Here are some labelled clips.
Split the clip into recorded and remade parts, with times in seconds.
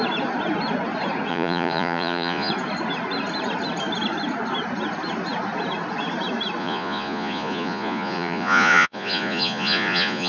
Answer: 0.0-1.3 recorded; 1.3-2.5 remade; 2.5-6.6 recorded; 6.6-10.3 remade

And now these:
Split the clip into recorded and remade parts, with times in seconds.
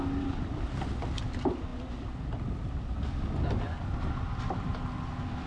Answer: 0.0-5.5 recorded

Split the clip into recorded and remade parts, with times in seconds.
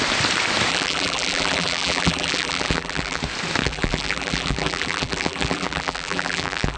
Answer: 0.0-0.7 recorded; 0.7-3.2 remade; 3.2-3.6 recorded; 3.6-6.8 remade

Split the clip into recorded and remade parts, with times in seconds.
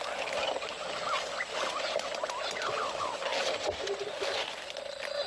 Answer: 0.0-5.3 recorded